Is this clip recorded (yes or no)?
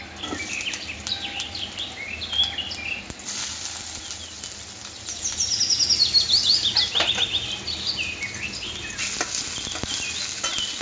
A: yes